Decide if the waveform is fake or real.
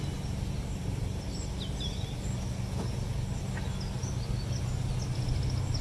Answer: real